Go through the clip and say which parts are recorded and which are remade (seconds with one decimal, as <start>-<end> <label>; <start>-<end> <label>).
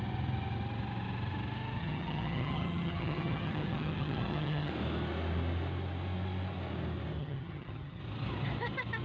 0.0-1.8 recorded; 1.8-4.7 remade; 4.7-7.2 recorded; 7.2-8.0 remade; 8.0-9.0 recorded